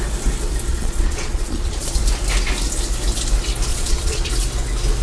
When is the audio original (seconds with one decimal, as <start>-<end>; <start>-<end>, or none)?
0.0-0.7; 2.0-3.7; 4.3-5.0